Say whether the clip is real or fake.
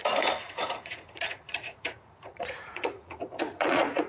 fake